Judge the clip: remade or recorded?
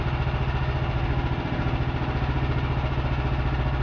recorded